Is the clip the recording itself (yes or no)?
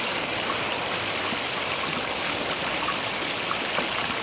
yes